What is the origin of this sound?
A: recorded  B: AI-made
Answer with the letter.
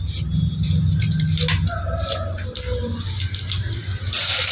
A